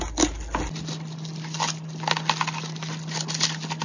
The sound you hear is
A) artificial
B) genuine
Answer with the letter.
B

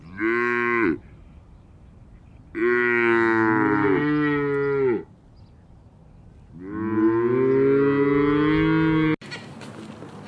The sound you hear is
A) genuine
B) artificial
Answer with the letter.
A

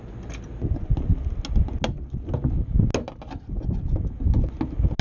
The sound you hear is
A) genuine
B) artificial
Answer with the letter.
A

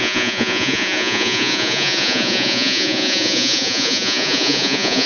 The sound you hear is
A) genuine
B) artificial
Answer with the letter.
B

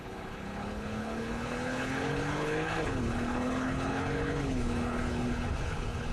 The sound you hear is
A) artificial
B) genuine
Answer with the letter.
A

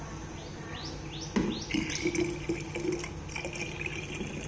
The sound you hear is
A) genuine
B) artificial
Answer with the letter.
A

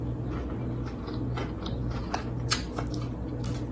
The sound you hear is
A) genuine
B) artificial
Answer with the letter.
A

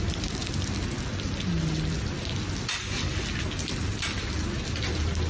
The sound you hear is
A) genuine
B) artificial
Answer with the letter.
A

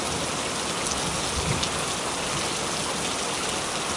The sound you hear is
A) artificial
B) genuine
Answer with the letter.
B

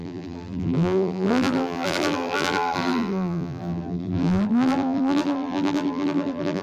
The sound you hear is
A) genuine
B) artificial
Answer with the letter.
B